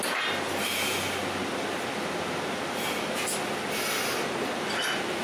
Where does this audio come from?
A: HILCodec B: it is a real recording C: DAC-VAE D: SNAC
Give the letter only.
B